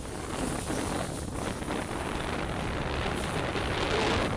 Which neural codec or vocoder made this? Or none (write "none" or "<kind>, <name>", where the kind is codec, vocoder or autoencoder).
none